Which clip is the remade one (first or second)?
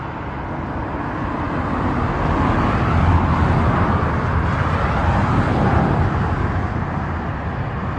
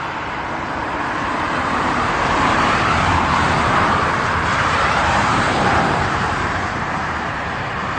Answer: second